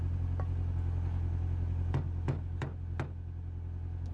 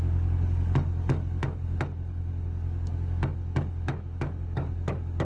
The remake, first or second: second